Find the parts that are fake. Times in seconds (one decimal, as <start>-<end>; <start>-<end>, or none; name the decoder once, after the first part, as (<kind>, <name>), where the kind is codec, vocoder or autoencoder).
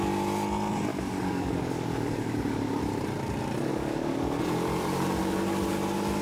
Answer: 0.9-2.8 (codec, DAC); 3.7-4.4